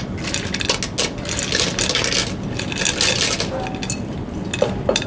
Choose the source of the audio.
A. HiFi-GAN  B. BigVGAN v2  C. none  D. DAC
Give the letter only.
C